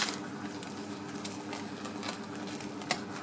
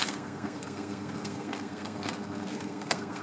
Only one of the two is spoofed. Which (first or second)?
second